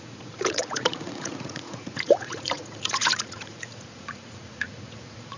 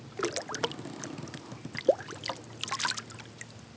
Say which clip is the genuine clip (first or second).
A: second